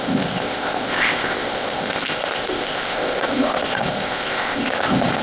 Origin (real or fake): fake